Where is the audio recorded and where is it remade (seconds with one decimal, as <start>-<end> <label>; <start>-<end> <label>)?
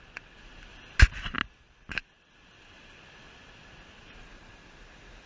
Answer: 0.0-5.3 recorded